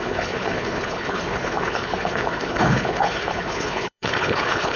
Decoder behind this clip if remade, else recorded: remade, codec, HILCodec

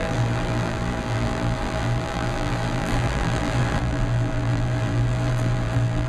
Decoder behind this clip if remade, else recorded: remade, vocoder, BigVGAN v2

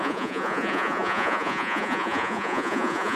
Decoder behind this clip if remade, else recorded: remade, vocoder, Vocos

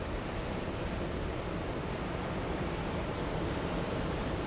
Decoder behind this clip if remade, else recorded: recorded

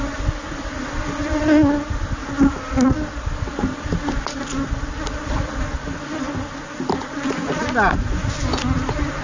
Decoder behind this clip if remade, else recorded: recorded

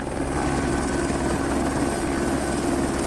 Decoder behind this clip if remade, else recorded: recorded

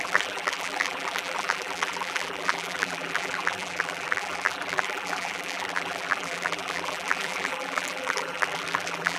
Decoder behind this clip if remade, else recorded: remade, vocoder, BigVGAN v2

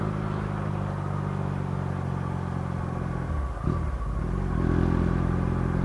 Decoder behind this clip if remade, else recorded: recorded